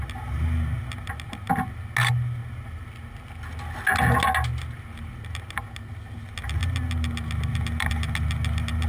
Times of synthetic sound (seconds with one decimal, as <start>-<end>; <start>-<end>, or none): none

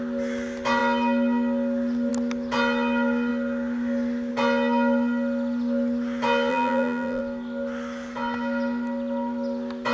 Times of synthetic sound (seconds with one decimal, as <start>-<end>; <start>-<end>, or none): 6.5-7.2